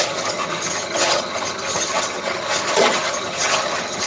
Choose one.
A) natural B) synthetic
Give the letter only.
B